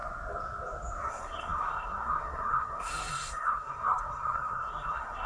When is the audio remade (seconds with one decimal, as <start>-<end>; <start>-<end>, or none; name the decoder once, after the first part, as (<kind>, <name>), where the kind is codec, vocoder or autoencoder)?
1.1-5.3 (codec, SNAC)